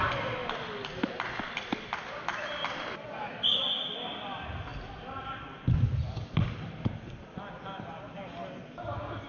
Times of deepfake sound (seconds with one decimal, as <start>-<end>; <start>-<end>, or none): 4.7-7.6

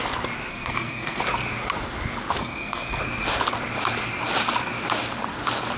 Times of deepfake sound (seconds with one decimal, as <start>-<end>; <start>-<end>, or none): 0.5-1.2; 2.4-3.0

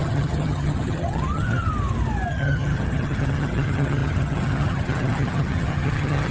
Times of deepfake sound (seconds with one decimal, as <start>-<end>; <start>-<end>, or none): 0.0-1.7; 2.3-6.3

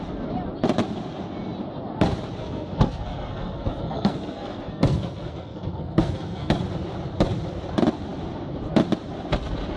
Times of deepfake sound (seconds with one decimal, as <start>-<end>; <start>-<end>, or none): 2.4-6.6

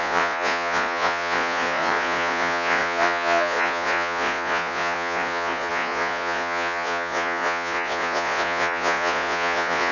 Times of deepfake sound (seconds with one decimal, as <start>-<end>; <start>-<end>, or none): 0.0-9.9